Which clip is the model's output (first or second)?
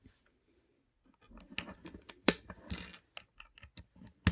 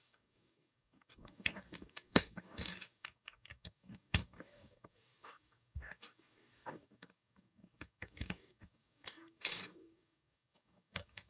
second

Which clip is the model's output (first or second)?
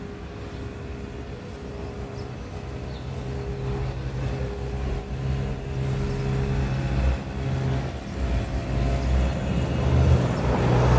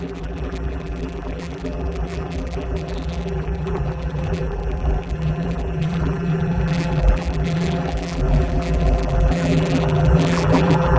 second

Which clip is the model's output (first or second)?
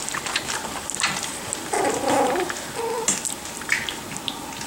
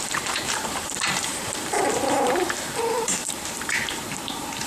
second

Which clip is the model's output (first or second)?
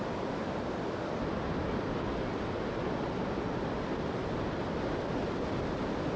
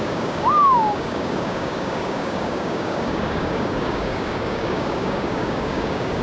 second